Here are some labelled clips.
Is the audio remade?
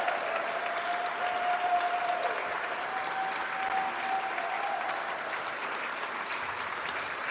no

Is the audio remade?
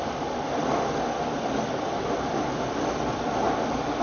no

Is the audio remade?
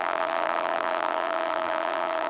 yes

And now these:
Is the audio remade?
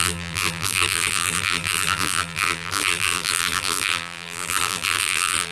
yes